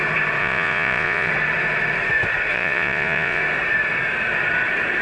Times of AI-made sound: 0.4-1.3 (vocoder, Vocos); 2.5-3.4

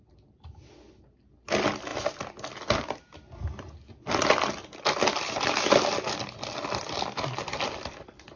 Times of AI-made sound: none

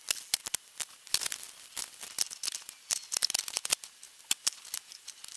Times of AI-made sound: none

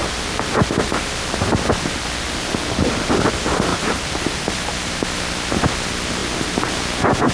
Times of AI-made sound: 0.0-2.0 (vocoder, BigVGAN v2); 3.7-4.5; 6.2-6.7

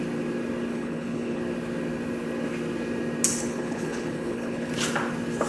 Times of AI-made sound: 0.7-1.4 (codec, HILCodec); 3.4-4.7